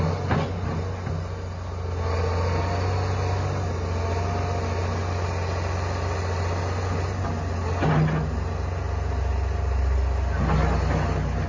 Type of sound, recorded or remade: recorded